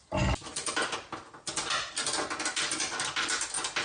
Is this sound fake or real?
real